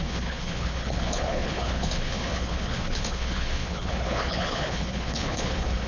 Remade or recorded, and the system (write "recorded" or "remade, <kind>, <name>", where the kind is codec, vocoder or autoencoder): remade, codec, HILCodec